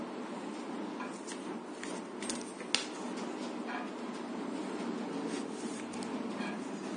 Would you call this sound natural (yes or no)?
yes